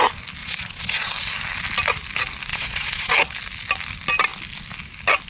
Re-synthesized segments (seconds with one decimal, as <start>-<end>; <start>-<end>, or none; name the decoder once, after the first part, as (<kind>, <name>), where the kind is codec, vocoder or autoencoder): 0.4-1.1 (vocoder, Vocos); 2.5-3.1